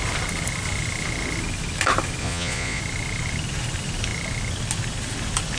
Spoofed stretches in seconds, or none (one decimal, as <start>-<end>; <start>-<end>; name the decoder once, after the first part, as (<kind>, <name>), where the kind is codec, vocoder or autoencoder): 2.2-2.8 (vocoder, Vocos)